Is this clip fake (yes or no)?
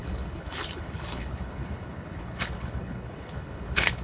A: yes